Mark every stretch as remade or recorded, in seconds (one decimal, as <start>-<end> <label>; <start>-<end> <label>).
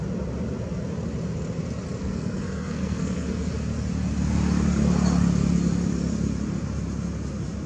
0.0-2.0 recorded; 2.0-3.5 remade; 3.5-7.7 recorded